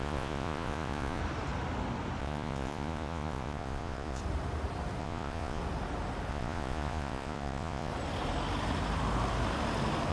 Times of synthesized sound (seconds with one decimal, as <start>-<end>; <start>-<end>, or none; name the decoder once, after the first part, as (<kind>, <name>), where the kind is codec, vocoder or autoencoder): 0.0-1.2 (vocoder, Vocos); 2.2-4.2; 5.0-5.6; 6.3-7.9